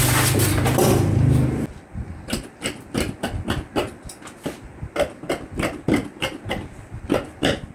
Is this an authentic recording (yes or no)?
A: yes